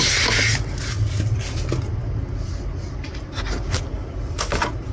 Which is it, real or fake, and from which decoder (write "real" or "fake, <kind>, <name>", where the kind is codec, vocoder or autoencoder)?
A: real